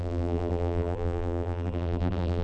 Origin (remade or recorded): remade